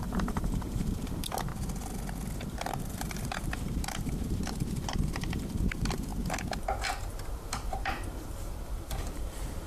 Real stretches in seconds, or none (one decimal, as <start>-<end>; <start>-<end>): 1.5-2.5; 6.1-7.0